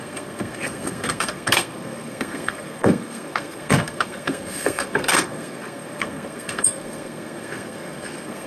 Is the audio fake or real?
fake